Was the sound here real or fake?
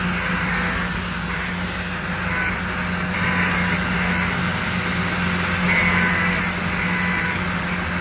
real